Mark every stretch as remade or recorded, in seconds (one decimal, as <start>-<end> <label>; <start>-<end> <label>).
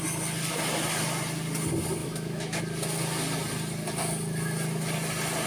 0.0-2.0 recorded; 2.0-2.6 remade; 2.6-5.5 recorded